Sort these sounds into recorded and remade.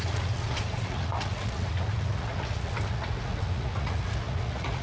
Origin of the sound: remade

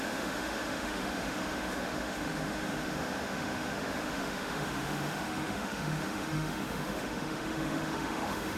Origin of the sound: remade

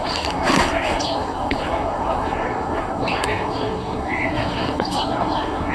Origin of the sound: remade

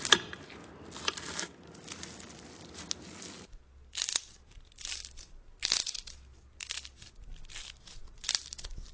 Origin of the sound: recorded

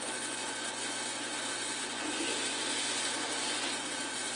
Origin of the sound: remade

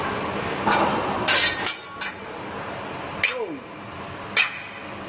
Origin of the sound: recorded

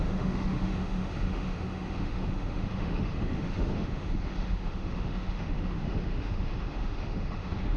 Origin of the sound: remade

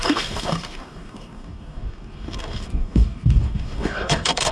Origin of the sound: remade